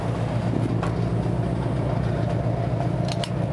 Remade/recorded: recorded